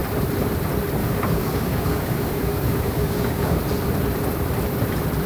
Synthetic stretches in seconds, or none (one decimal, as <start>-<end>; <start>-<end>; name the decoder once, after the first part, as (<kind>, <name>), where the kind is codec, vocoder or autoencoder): 1.0-3.6 (codec, DAC)